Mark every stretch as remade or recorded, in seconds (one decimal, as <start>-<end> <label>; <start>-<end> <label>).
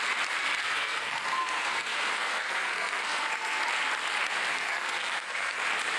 0.0-0.6 recorded; 0.6-3.6 remade; 3.6-4.5 recorded; 4.5-5.6 remade; 5.6-6.0 recorded